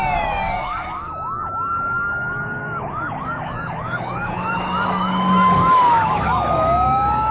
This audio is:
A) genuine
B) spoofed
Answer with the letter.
B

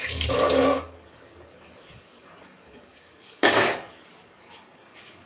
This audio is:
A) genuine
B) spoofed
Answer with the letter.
B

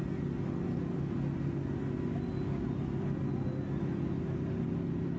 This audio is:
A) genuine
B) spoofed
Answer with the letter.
A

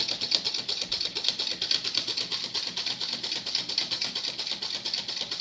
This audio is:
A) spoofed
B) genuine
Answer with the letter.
B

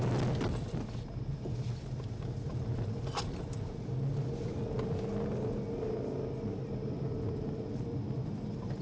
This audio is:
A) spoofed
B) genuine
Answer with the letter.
B